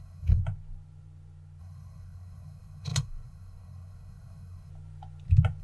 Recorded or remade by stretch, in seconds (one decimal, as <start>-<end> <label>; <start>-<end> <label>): 0.0-0.4 remade; 0.4-1.6 recorded; 1.6-4.7 remade; 4.7-5.6 recorded